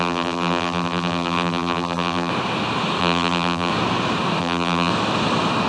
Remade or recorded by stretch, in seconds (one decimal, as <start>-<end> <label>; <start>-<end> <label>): 0.0-2.3 remade; 2.3-3.0 recorded; 3.0-3.7 remade; 3.7-4.4 recorded; 4.4-4.9 remade; 4.9-5.7 recorded

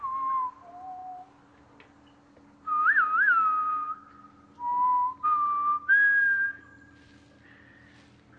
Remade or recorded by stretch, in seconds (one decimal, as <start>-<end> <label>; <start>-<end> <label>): 0.0-8.4 recorded